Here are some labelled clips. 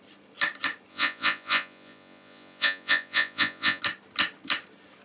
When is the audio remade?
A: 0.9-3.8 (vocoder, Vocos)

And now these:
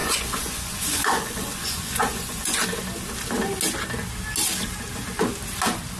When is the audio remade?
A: 0.0-2.6 (vocoder, Vocos)